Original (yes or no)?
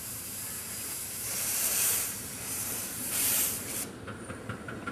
no